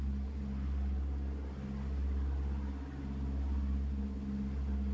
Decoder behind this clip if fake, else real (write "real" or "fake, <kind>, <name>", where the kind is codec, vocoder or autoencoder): real